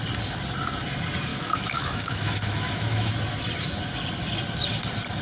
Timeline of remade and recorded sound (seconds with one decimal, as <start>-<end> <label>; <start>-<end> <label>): 0.0-1.3 recorded; 1.3-3.1 remade; 3.1-5.2 recorded